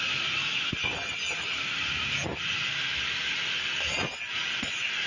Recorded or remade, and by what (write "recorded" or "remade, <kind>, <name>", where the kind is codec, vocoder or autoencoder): recorded